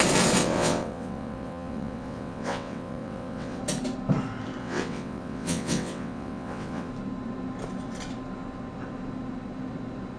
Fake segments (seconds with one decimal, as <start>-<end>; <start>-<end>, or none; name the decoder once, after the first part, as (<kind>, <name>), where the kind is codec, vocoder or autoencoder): 0.4-3.6 (vocoder, WaveNeXt); 4.6-6.9